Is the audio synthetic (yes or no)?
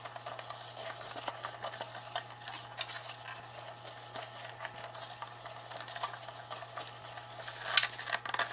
no